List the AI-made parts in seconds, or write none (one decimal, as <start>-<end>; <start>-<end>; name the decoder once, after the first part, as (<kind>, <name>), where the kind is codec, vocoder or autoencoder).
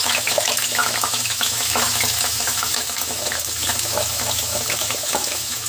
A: 0.0-5.7 (autoencoder, DAC-VAE)